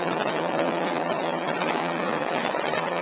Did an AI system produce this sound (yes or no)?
yes